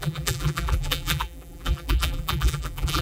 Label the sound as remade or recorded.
remade